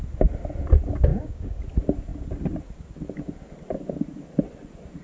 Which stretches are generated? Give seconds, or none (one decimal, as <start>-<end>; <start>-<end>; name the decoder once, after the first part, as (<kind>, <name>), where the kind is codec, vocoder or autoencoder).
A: 1.1-1.6 (codec, DAC)